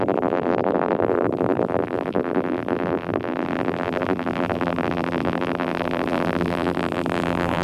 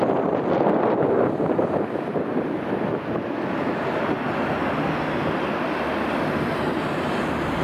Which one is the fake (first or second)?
first